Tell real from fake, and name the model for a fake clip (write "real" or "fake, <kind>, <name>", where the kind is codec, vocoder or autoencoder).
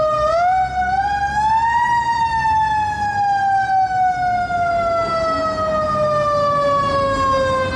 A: real